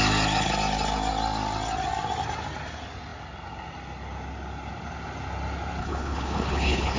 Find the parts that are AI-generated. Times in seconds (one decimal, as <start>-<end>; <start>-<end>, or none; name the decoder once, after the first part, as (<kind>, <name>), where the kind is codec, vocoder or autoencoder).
5.8-7.0 (codec, HILCodec)